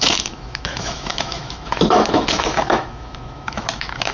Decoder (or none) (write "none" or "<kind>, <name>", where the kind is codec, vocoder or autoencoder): autoencoder, DAC-VAE